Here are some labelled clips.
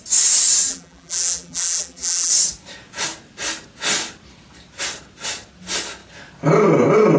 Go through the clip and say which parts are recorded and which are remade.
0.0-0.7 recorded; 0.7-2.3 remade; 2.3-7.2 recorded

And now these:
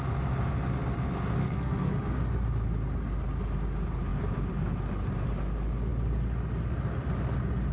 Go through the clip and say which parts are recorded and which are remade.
0.0-1.4 recorded; 1.4-1.9 remade; 1.9-7.7 recorded

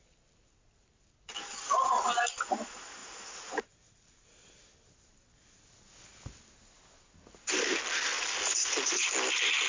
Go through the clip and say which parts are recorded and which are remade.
0.0-9.7 recorded

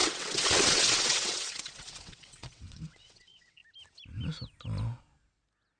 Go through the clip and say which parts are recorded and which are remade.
0.0-3.6 remade; 3.6-5.8 recorded

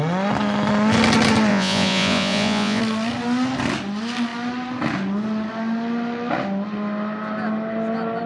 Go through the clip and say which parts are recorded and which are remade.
0.0-1.5 recorded; 1.5-2.8 remade; 2.8-8.3 recorded

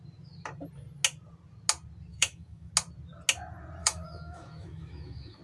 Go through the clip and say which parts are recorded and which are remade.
0.0-2.1 recorded; 2.1-2.7 remade; 2.7-3.8 recorded; 3.8-5.4 remade

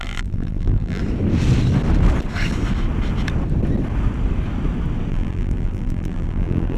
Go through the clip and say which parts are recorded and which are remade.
0.0-1.0 remade; 1.0-5.1 recorded; 5.1-6.8 remade